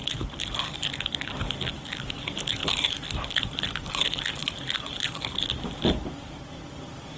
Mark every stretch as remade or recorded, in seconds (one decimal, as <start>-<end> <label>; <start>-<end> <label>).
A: 0.0-2.6 recorded; 2.6-3.3 remade; 3.3-4.4 recorded; 4.4-5.5 remade; 5.5-7.2 recorded